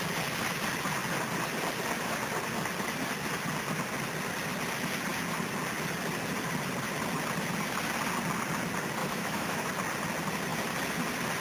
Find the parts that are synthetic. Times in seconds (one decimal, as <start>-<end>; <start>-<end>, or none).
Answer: 9.0-9.7